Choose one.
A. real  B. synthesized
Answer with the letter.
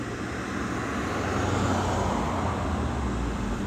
A